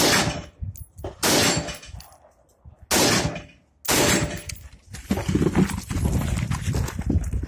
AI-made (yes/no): no